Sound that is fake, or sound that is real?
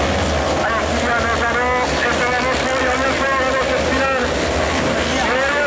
real